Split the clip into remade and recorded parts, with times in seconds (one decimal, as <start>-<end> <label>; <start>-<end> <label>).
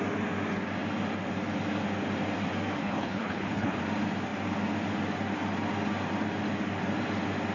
0.0-2.8 recorded; 2.8-3.8 remade; 3.8-7.5 recorded